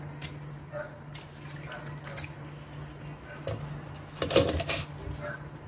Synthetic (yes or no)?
no